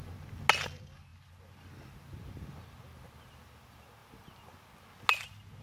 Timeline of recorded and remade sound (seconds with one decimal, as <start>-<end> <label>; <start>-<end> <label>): 0.0-5.6 recorded